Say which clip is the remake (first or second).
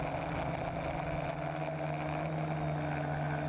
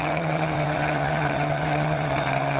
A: second